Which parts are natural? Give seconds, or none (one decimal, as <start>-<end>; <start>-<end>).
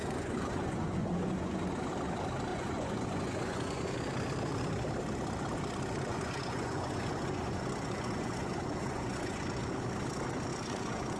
1.9-2.5; 3.9-6.1; 9.7-10.5